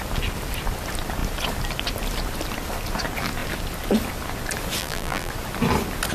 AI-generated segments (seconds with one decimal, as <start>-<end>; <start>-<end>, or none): 4.8-5.3